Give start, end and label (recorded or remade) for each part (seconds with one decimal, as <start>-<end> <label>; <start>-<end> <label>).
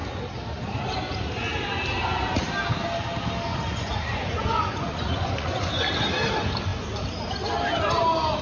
0.0-3.5 recorded; 3.5-5.9 remade; 5.9-8.4 recorded